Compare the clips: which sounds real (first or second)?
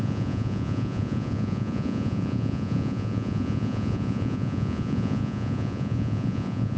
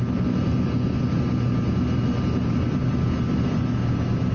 second